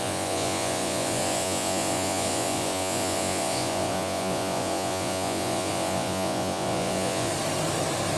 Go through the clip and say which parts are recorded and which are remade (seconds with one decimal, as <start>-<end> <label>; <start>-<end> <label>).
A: 0.0-7.3 remade; 7.3-8.2 recorded